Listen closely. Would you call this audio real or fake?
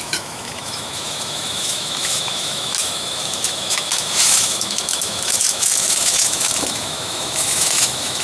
fake